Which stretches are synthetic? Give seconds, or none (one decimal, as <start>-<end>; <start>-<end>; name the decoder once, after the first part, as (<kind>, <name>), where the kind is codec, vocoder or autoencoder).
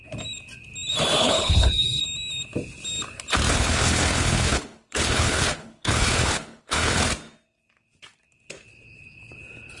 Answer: 1.2-2.0 (codec, HILCodec); 3.5-7.0